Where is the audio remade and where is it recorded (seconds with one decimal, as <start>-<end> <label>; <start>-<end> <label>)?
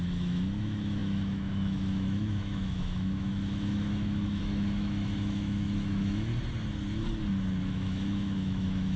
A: 0.0-6.3 remade; 6.3-7.6 recorded; 7.6-9.0 remade